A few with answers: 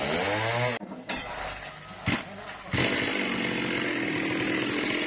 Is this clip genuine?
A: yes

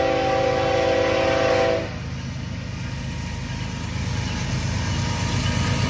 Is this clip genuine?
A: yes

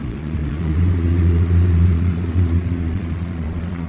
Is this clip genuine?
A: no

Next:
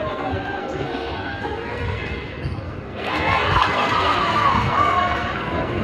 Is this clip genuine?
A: no